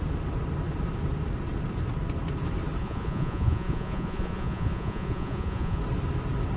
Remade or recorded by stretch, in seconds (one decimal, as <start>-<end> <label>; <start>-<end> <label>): 0.0-2.8 recorded; 2.8-5.8 remade; 5.8-6.6 recorded